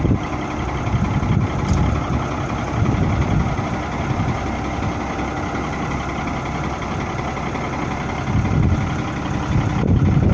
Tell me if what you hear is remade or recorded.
recorded